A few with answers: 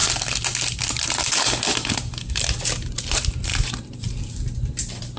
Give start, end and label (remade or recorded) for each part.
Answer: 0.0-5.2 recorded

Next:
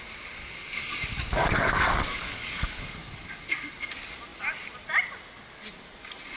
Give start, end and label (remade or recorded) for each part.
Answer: 0.0-0.4 recorded; 0.4-3.9 remade; 3.9-6.4 recorded

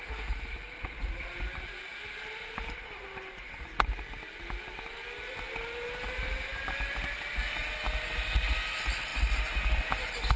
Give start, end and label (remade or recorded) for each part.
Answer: 0.0-10.4 recorded

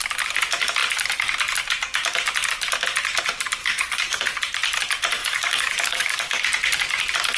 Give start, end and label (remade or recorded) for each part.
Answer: 0.0-3.6 recorded; 3.6-4.2 remade; 4.2-5.2 recorded; 5.2-6.4 remade; 6.4-7.4 recorded

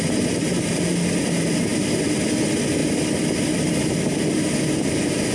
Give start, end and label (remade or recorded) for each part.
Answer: 0.0-5.3 recorded